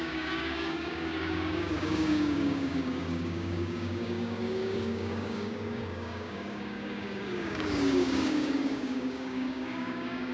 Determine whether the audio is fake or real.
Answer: fake